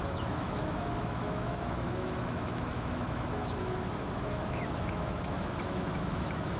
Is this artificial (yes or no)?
yes